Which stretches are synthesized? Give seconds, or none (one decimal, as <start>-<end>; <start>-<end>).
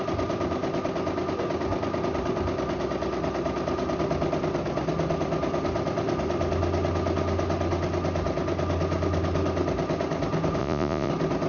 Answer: 10.6-11.1